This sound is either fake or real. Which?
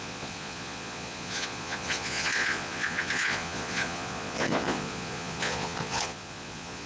fake